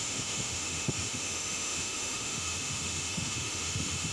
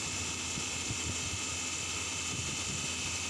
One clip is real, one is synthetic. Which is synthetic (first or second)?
first